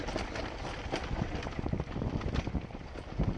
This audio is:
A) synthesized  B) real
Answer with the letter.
B